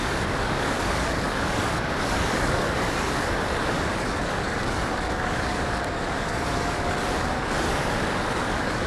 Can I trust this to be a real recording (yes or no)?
no